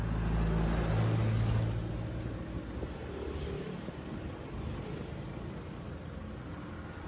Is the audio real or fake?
real